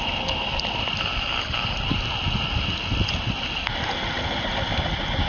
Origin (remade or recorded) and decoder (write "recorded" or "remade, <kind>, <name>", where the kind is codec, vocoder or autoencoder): recorded